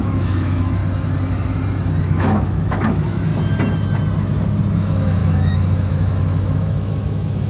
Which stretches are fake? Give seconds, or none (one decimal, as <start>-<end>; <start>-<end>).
0.0-0.8; 2.0-3.3; 4.7-7.5